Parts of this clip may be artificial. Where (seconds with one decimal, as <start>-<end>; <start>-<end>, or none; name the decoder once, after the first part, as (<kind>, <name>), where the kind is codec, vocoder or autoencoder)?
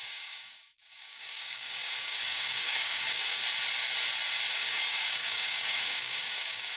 0.0-3.4 (codec, DAC); 4.5-6.8